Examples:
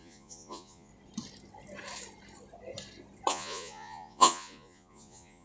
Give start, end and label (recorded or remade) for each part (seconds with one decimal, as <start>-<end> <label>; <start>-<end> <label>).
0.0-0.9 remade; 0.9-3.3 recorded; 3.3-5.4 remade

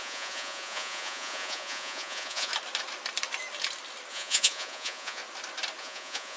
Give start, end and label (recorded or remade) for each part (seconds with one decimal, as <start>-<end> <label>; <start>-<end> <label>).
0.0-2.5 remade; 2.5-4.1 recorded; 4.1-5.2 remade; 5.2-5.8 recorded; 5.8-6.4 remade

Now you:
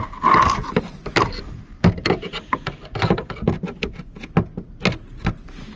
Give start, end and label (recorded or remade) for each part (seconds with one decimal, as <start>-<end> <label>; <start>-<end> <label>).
0.0-5.8 recorded